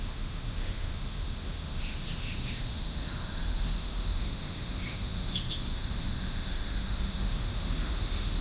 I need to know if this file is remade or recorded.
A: remade